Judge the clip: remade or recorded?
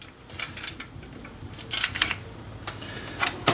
recorded